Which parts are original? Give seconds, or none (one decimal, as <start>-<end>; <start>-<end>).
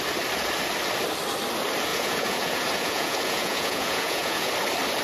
0.0-1.9; 4.5-5.0